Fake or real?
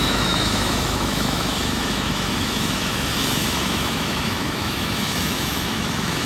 fake